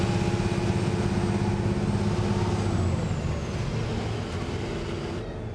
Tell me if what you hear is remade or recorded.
recorded